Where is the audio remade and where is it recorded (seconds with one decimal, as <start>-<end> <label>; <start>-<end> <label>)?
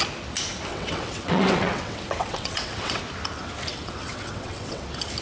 0.0-0.7 recorded; 0.7-3.0 remade; 3.0-3.7 recorded; 3.7-4.8 remade; 4.8-5.2 recorded